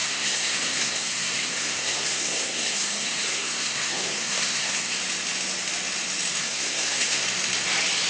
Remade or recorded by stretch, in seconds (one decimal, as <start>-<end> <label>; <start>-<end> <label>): 0.0-5.0 remade; 5.0-6.4 recorded; 6.4-7.2 remade; 7.2-8.1 recorded